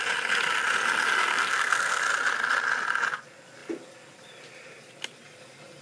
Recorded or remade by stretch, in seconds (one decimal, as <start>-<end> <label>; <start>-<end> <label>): 0.0-1.3 recorded; 1.3-2.0 remade; 2.0-5.8 recorded